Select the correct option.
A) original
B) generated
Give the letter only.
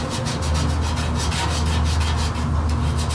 A